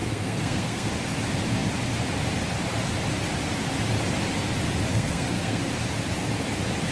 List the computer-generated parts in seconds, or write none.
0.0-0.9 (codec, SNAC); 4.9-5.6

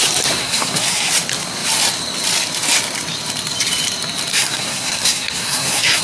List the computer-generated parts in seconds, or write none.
0.4-1.1 (codec, SNAC); 4.3-6.0

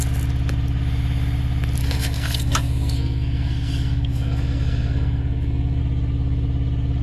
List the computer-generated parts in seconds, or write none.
1.8-5.8 (codec, SNAC)

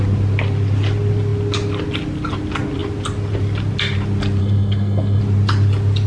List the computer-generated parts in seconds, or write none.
4.4-5.2 (codec, SNAC)

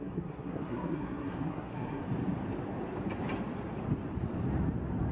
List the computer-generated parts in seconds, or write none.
0.0-2.0 (codec, SNAC)